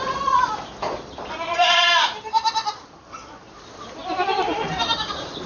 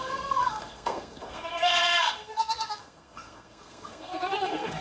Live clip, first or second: first